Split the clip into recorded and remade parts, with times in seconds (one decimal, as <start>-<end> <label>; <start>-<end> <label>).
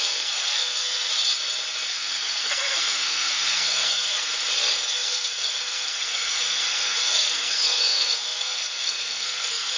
0.0-1.1 remade; 1.1-1.9 recorded; 1.9-4.3 remade; 4.3-4.9 recorded; 4.9-9.8 remade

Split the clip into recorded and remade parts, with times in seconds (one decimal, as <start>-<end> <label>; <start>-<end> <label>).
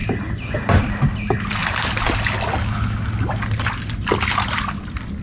0.0-5.2 recorded